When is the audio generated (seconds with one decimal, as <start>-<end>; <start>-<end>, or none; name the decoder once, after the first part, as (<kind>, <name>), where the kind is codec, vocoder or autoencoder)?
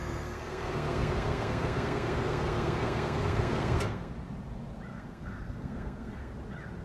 0.0-4.1 (codec, SNAC); 4.9-6.3